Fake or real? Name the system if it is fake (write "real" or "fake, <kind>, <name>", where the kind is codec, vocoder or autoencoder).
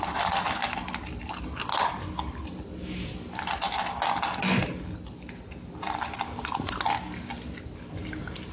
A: real